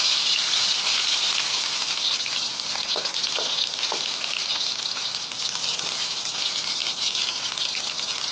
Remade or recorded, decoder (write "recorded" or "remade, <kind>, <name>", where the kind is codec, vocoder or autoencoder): recorded